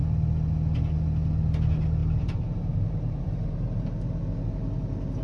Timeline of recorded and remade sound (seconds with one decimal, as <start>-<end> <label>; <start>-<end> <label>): 0.0-2.0 recorded; 2.0-4.1 remade; 4.1-5.2 recorded